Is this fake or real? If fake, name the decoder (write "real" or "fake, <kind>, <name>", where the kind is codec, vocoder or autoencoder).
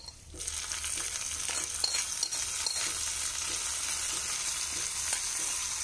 real